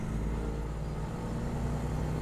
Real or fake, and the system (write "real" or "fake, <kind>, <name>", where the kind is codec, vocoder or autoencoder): real